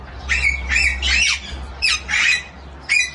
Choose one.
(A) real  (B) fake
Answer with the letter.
A